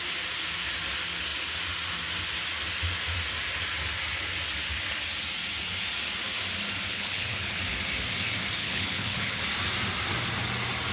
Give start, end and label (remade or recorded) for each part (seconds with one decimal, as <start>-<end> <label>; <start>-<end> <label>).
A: 0.0-6.9 recorded; 6.9-7.6 remade; 7.6-8.6 recorded; 8.6-9.4 remade; 9.4-10.9 recorded